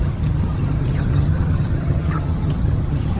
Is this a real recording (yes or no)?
no